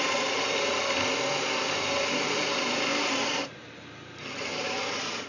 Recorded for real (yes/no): no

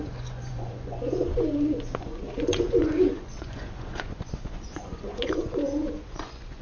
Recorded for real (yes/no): no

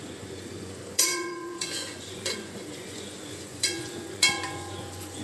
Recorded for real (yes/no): no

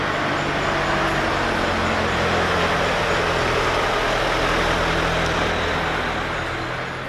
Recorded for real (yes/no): yes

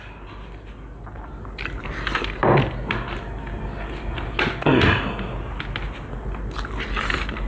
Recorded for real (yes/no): yes